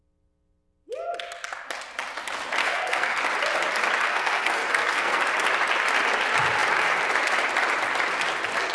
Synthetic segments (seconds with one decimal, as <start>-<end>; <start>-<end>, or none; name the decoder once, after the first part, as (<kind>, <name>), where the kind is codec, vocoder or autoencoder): 2.6-3.2 (codec, SNAC); 4.0-5.2